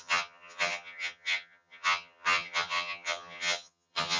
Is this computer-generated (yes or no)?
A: yes